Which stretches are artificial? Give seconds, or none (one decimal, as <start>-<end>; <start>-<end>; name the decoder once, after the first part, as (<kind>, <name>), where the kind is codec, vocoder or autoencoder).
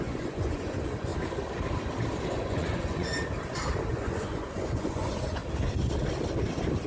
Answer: 0.0-1.1 (vocoder, Vocos); 2.3-3.1; 3.9-5.4